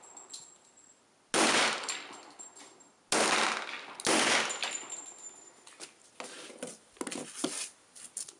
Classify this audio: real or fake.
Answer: real